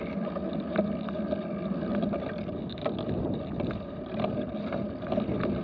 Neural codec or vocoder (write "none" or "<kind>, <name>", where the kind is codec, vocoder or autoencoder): none